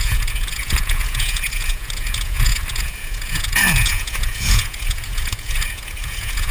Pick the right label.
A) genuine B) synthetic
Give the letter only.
B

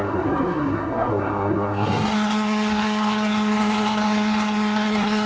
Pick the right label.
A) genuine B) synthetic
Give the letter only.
B